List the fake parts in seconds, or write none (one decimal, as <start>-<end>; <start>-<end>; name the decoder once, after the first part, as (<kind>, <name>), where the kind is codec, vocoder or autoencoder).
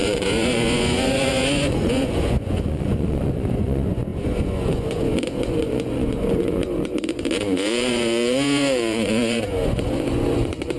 0.0-10.8 (vocoder, Vocos)